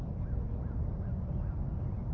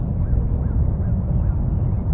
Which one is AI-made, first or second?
second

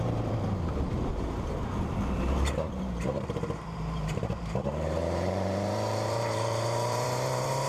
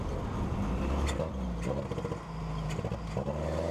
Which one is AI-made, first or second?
first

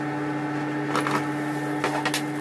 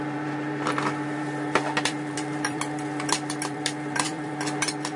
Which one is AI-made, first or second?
second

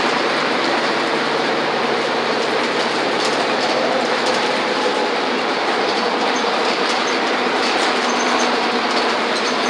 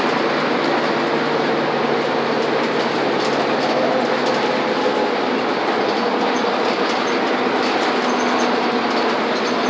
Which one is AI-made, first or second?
first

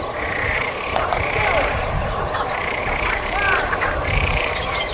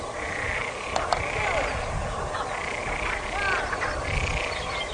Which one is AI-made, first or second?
first